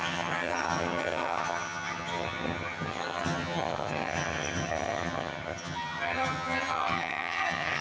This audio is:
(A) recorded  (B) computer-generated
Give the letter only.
B